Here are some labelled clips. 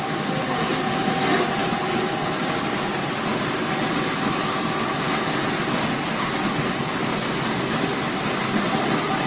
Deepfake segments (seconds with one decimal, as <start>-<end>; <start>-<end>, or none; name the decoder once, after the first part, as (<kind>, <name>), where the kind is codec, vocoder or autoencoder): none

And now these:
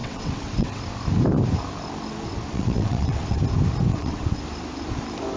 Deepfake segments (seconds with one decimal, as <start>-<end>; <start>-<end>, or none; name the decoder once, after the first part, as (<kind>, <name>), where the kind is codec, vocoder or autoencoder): 0.0-0.8 (vocoder, WaveNeXt); 2.5-3.4; 3.9-4.4

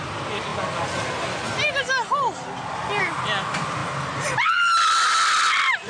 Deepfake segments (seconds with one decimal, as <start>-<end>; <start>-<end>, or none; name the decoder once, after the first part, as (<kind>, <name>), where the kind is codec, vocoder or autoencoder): none